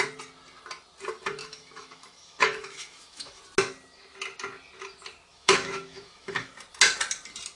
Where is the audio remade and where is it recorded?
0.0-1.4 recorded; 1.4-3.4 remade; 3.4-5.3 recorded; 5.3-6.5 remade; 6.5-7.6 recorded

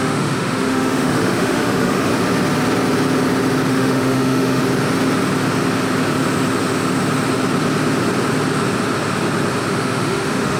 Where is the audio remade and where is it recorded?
0.0-2.1 remade; 2.1-3.7 recorded; 3.7-4.6 remade; 4.6-9.7 recorded; 9.7-10.6 remade

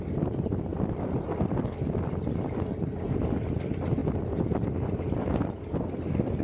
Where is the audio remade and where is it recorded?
0.0-6.4 recorded

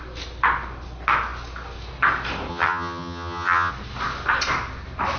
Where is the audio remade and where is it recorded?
0.0-2.5 recorded; 2.5-3.7 remade; 3.7-5.2 recorded

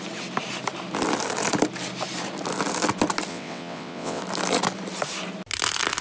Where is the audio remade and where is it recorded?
0.0-3.3 recorded; 3.3-4.2 remade; 4.2-6.0 recorded

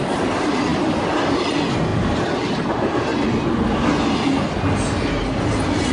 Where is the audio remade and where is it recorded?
0.0-5.9 recorded

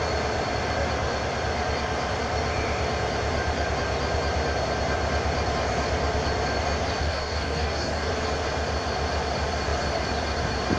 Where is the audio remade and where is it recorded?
0.0-7.0 recorded; 7.0-8.1 remade; 8.1-10.8 recorded

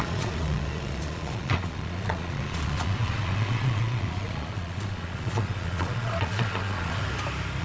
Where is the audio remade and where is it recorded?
0.0-7.0 remade; 7.0-7.6 recorded